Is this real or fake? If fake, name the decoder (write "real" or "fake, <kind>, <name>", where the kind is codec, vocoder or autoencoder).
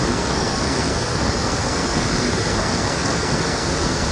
fake, codec, SNAC